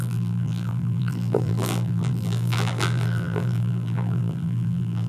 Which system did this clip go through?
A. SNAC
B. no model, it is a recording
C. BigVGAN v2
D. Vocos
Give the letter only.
C